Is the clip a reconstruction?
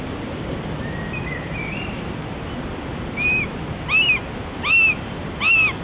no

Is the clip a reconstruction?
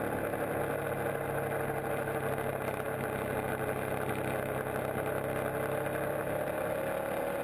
no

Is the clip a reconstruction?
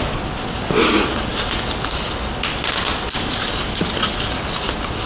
no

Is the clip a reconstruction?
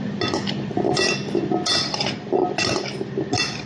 no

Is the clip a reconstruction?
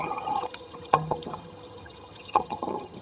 yes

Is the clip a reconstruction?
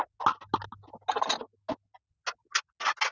no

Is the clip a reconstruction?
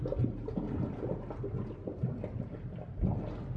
no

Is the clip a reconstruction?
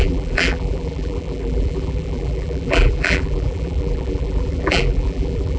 yes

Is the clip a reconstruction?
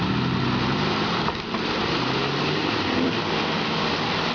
no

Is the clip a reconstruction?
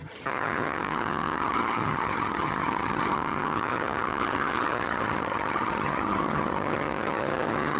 yes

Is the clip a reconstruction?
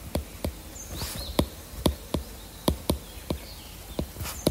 no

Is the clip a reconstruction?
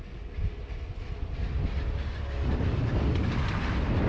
no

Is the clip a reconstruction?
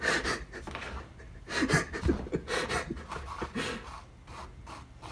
no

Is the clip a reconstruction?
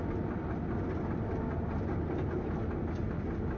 no